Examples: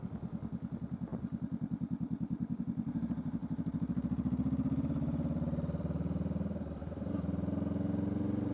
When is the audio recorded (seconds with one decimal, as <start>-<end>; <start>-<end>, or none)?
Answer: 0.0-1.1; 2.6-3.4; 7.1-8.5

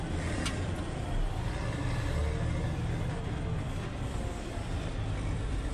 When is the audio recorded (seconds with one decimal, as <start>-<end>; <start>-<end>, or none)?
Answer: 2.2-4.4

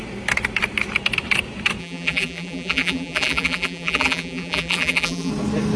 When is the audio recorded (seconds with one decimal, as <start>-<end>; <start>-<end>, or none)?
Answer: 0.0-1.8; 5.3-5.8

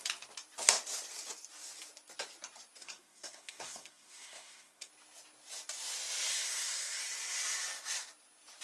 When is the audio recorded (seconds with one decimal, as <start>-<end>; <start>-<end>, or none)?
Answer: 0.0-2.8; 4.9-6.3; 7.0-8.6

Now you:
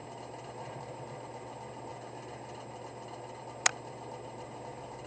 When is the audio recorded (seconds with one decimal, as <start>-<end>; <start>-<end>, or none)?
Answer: 0.0-5.1

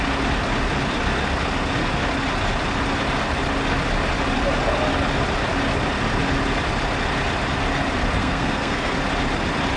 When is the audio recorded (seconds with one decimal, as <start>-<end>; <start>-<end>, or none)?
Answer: 0.0-8.2; 8.9-9.8

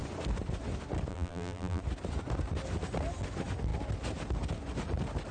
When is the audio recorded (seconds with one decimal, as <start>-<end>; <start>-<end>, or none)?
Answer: 0.0-1.1; 1.8-5.3